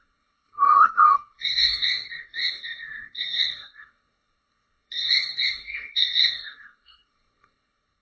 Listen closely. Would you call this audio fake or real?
fake